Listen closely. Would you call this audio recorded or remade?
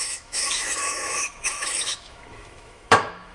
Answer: remade